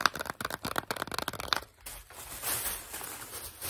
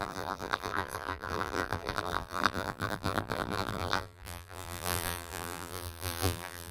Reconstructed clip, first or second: second